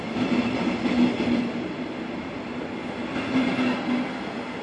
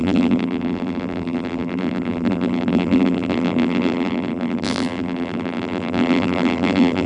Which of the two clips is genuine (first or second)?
first